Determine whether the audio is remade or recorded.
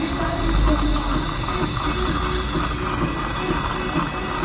recorded